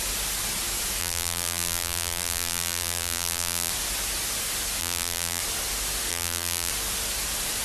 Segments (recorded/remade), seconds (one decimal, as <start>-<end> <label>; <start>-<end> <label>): 0.0-1.0 recorded; 1.0-3.7 remade; 3.7-4.8 recorded; 4.8-5.4 remade; 5.4-6.1 recorded; 6.1-6.7 remade; 6.7-7.6 recorded